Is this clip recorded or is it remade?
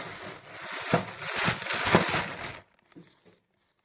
recorded